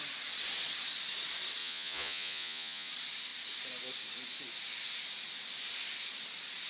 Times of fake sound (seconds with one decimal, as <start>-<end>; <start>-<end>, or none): 1.6-2.9